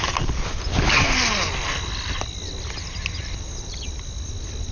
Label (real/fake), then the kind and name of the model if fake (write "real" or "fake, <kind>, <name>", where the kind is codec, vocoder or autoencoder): real